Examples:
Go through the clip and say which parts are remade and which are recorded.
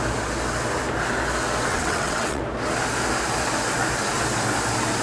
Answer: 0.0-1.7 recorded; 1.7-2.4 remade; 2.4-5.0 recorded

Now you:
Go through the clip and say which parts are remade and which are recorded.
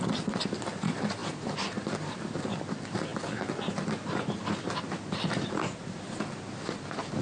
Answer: 0.0-7.2 recorded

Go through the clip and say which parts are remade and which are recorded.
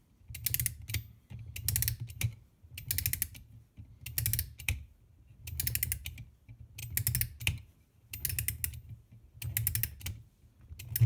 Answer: 0.0-11.1 recorded